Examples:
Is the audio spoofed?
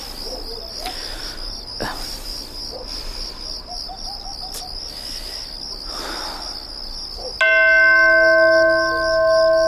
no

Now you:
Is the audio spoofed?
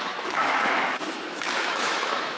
yes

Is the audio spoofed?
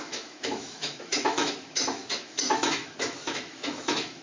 yes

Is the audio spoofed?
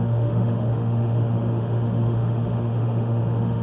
yes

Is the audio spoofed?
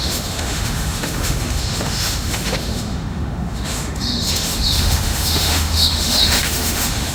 yes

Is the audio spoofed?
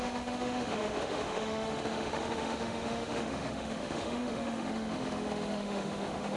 yes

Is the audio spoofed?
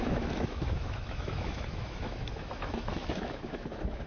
yes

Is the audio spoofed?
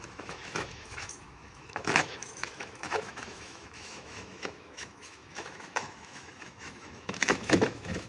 yes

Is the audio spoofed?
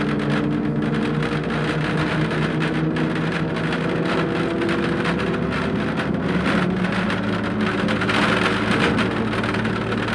no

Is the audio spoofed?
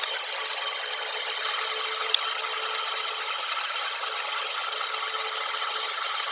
no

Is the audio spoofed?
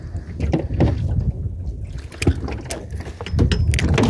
no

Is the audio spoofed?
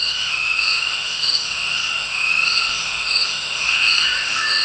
yes